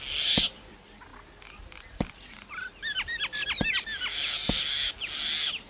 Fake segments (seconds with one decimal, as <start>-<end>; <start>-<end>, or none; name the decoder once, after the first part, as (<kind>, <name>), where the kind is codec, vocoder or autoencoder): none